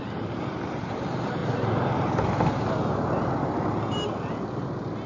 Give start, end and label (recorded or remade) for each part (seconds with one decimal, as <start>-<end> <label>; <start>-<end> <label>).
0.0-5.1 recorded